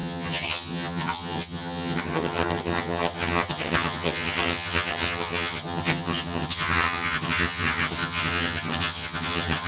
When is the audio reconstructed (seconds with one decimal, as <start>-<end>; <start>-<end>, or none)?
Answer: 0.0-9.7